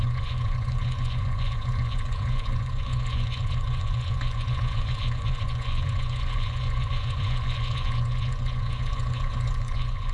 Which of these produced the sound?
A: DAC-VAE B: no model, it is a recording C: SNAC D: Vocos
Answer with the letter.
D